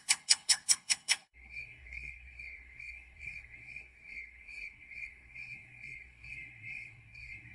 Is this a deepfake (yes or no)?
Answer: yes